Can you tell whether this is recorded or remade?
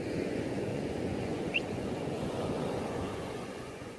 remade